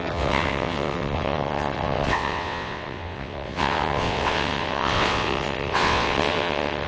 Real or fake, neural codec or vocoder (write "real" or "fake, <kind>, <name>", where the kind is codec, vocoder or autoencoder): fake, vocoder, WaveNeXt